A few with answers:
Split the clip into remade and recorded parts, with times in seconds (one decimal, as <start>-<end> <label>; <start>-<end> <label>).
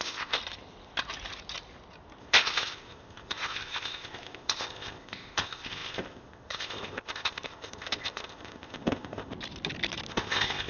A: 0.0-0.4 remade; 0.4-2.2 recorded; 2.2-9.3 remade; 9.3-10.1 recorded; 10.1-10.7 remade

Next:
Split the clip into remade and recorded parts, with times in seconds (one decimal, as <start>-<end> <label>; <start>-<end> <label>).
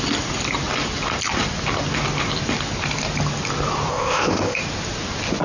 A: 0.0-3.9 recorded; 3.9-4.6 remade; 4.6-5.4 recorded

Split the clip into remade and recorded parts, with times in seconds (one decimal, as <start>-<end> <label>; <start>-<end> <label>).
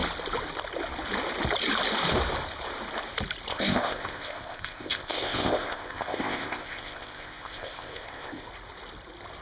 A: 0.0-3.5 recorded; 3.5-8.5 remade; 8.5-9.4 recorded